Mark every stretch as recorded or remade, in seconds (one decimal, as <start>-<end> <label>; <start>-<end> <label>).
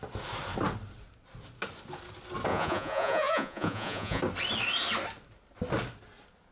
0.0-2.5 recorded; 2.5-4.2 remade; 4.2-6.5 recorded